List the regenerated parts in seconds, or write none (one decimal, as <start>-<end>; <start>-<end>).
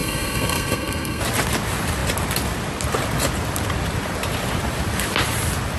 0.0-1.2